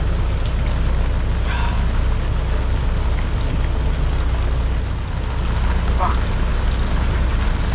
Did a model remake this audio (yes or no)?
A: no